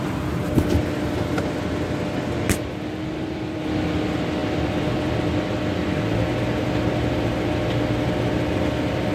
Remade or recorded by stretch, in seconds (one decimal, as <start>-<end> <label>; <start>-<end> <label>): 0.0-9.1 recorded